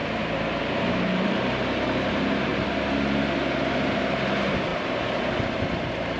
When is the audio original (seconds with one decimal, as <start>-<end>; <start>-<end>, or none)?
2.5-3.9